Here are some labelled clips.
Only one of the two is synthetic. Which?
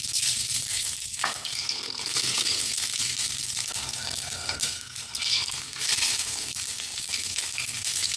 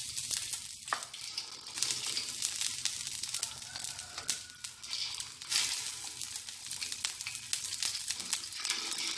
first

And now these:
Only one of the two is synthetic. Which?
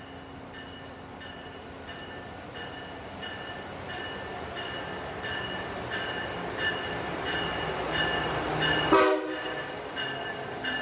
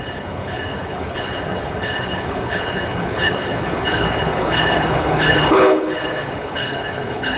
second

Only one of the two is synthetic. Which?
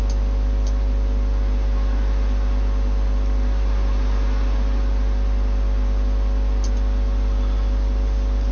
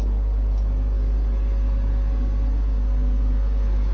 second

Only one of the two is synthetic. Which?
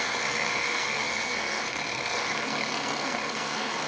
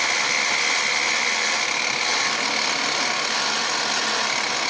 first